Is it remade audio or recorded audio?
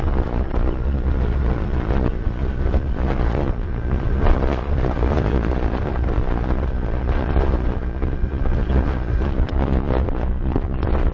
remade